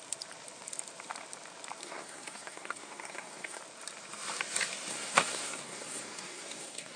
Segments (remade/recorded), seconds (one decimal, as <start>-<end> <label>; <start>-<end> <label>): 0.0-1.8 recorded; 1.8-3.6 remade; 3.6-4.9 recorded; 4.9-7.0 remade